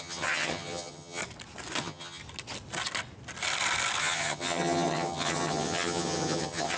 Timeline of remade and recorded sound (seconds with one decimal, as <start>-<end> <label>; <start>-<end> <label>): 0.0-1.2 remade; 1.2-1.8 recorded; 1.8-2.2 remade; 2.2-4.0 recorded; 4.0-6.8 remade